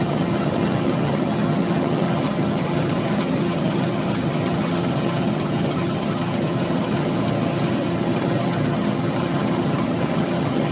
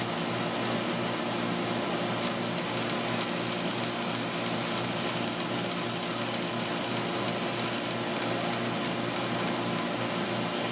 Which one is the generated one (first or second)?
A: first